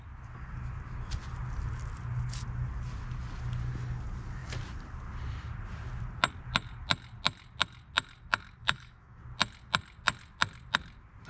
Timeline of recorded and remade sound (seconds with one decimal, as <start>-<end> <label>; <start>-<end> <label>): 0.0-8.6 recorded; 8.6-9.2 remade; 9.2-11.3 recorded